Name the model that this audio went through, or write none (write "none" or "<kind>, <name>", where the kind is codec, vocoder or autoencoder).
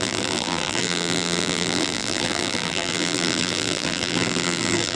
vocoder, BigVGAN v2